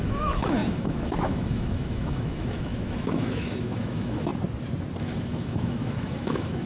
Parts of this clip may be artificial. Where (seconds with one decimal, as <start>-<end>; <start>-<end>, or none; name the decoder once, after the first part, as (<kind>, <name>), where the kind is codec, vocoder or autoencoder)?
0.0-4.3 (autoencoder, DAC-VAE); 5.0-6.7